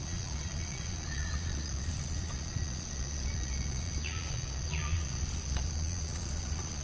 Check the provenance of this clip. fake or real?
fake